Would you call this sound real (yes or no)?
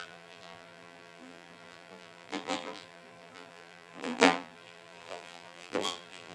no